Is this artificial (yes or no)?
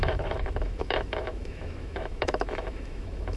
yes